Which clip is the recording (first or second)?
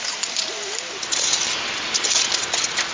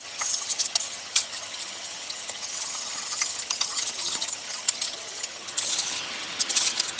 first